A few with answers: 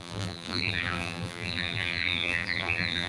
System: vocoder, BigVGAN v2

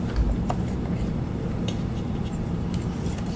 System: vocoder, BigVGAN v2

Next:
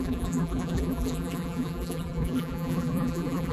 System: vocoder, BigVGAN v2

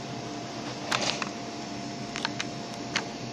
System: none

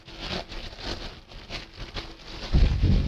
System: none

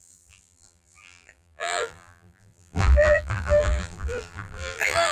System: vocoder, BigVGAN v2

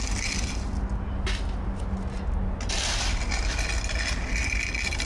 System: none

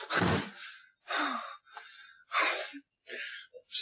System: none